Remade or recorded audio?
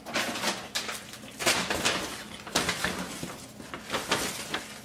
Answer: recorded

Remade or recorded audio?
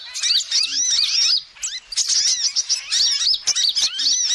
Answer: recorded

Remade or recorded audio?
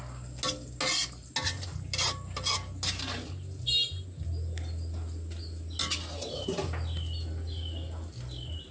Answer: recorded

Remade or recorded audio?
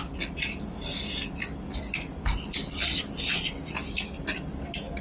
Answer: recorded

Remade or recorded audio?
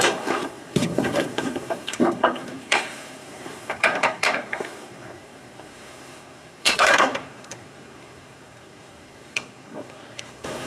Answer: remade